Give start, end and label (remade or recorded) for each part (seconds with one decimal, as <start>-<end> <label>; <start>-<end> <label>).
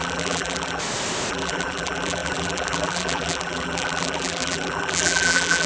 0.0-0.8 remade; 0.8-1.3 recorded; 1.3-5.7 remade